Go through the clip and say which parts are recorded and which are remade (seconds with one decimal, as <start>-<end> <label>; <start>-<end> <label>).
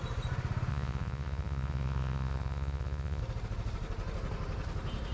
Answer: 0.0-0.7 recorded; 0.7-3.2 remade; 3.2-5.1 recorded